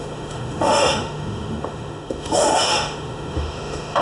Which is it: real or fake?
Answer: fake